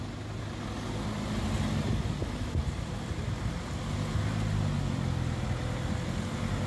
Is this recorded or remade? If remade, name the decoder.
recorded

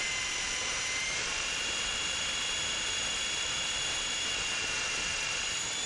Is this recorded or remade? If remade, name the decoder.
remade, vocoder, BigVGAN v2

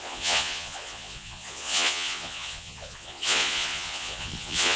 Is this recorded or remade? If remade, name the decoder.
remade, vocoder, Vocos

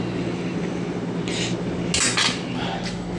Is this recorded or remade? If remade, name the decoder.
recorded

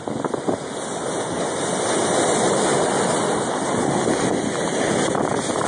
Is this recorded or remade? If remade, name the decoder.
recorded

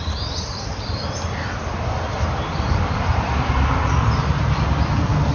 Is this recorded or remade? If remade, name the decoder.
recorded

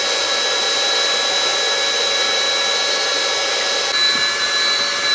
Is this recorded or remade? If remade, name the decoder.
recorded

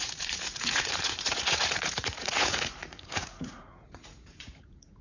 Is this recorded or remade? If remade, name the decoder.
remade, vocoder, Vocos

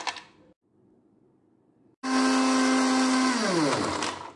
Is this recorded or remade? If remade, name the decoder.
recorded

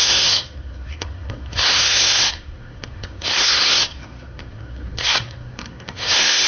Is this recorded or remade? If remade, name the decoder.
remade, codec, SNAC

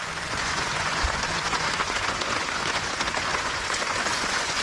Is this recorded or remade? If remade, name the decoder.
remade, vocoder, Vocos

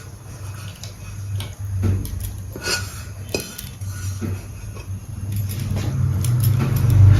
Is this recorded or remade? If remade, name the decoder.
recorded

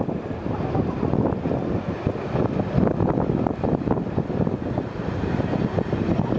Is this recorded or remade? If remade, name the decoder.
recorded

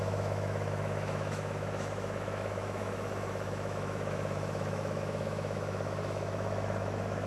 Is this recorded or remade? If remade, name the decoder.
remade, autoencoder, DAC-VAE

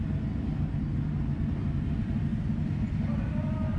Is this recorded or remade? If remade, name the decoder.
recorded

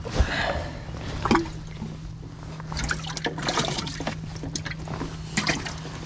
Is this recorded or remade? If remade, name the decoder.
recorded